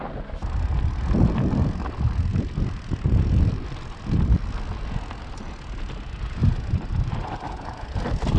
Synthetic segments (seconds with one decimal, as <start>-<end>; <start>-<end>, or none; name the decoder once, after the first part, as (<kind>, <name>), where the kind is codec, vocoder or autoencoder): none